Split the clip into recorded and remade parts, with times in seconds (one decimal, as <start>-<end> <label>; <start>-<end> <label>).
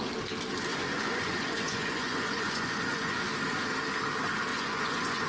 0.0-0.7 recorded; 0.7-3.2 remade; 3.2-4.5 recorded; 4.5-5.3 remade